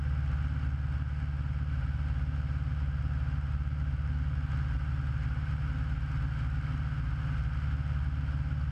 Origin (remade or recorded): recorded